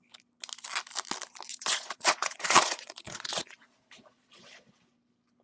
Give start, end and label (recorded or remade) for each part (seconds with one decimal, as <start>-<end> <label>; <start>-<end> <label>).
0.0-1.5 recorded; 1.5-4.7 remade; 4.7-5.4 recorded